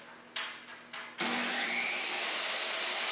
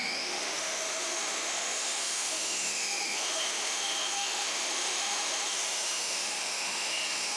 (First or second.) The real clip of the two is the first